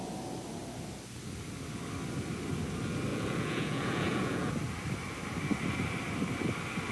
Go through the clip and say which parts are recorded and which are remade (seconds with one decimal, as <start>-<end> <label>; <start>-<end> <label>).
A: 0.0-3.1 recorded; 3.1-4.5 remade; 4.5-6.9 recorded